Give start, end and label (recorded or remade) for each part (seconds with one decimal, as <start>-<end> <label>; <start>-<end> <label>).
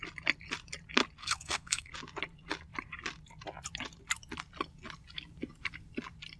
0.0-1.2 recorded; 1.2-1.9 remade; 1.9-6.4 recorded